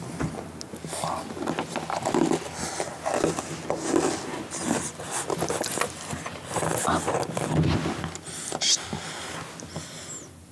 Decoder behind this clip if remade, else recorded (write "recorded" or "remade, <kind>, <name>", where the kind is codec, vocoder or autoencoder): recorded